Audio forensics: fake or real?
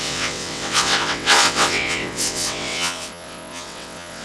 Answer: fake